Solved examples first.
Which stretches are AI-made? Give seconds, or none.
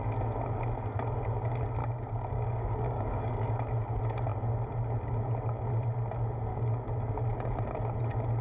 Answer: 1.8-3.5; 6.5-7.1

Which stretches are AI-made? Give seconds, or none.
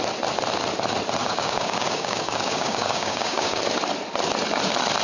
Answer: 1.2-3.6